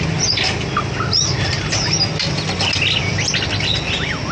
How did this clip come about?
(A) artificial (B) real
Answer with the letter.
B